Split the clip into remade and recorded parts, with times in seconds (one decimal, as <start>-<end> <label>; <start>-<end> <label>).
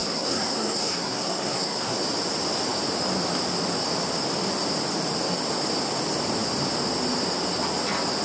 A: 0.0-2.0 remade; 2.0-8.2 recorded